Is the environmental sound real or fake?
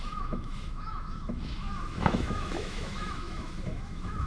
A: fake